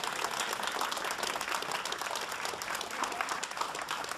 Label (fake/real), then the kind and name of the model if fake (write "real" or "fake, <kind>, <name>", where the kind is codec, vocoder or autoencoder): real